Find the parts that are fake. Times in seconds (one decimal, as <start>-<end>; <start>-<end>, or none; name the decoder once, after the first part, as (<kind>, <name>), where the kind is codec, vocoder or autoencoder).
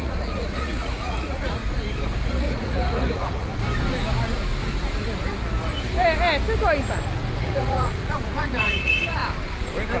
0.0-1.6 (vocoder, Vocos); 2.3-3.5; 7.4-9.2